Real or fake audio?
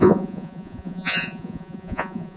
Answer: fake